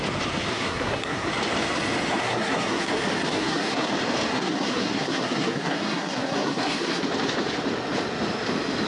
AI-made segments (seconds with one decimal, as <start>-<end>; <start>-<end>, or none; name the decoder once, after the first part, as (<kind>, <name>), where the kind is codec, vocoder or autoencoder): 0.5-1.3 (codec, SNAC); 2.2-2.9; 3.3-3.9; 4.3-7.0